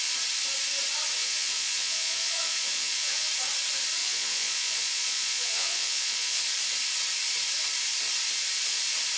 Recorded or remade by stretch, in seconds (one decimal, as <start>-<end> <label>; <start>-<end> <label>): 0.0-1.2 recorded; 1.2-3.3 remade; 3.3-4.0 recorded; 4.0-6.4 remade; 6.4-9.2 recorded